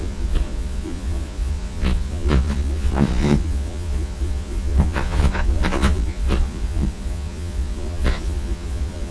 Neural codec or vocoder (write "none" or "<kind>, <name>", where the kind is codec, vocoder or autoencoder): vocoder, Vocos